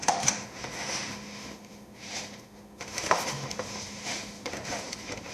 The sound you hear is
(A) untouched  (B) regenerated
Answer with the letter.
B